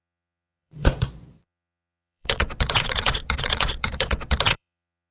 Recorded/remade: remade